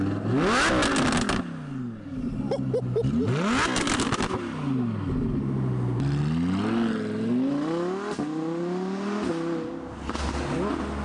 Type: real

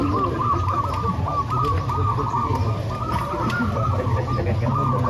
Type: real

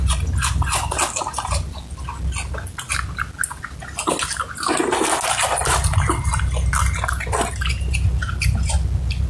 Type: real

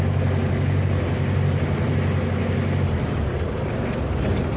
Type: real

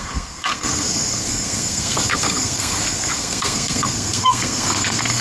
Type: fake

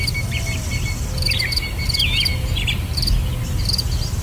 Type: real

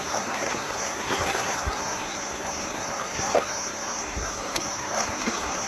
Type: fake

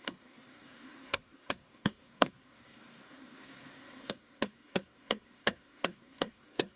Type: fake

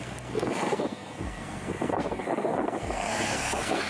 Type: fake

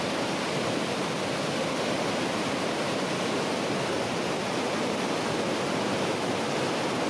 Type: real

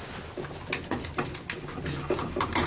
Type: real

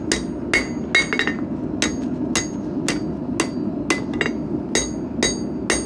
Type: real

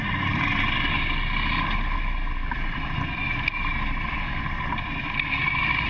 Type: real